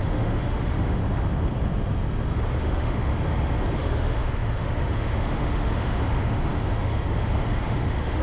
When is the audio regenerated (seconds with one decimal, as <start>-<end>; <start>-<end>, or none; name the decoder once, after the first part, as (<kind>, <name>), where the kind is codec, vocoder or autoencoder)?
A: 0.0-1.0 (autoencoder, DAC-VAE); 2.6-3.1; 3.8-8.2